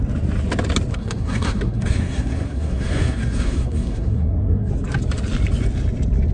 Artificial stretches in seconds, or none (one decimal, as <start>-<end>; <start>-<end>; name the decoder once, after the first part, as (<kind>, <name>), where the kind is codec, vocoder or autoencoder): 0.9-4.7 (codec, SNAC)